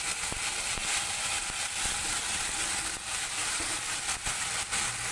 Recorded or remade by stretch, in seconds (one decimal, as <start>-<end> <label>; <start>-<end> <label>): 0.0-3.4 recorded; 3.4-4.0 remade; 4.0-5.1 recorded

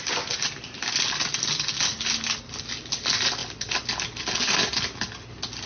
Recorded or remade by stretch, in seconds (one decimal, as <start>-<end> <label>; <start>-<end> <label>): 0.0-5.7 recorded

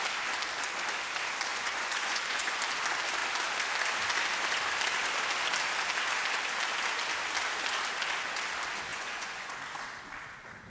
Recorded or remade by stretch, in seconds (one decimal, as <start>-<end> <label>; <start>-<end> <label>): 0.0-1.5 recorded; 1.5-2.6 remade; 2.6-8.9 recorded; 8.9-9.5 remade; 9.5-10.7 recorded

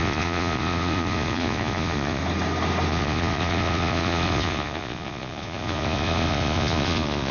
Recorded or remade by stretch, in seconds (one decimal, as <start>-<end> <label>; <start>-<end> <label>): 0.0-2.2 remade; 2.2-2.9 recorded; 2.9-7.3 remade

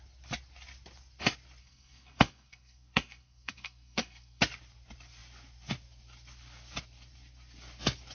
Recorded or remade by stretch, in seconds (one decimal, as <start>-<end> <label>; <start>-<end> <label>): 0.0-1.6 recorded; 1.6-4.4 remade; 4.4-8.1 recorded

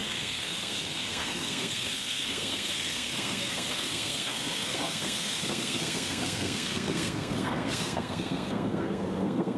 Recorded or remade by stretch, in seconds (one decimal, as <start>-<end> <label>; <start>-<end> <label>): 0.0-9.6 remade

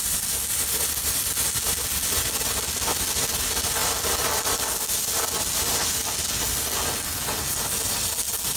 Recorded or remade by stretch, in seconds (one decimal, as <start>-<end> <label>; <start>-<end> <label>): 0.0-8.6 recorded

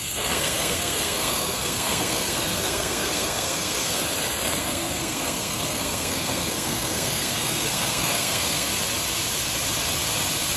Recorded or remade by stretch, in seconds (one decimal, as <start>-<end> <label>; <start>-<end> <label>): 0.0-4.0 remade; 4.0-4.6 recorded; 4.6-8.7 remade; 8.7-10.6 recorded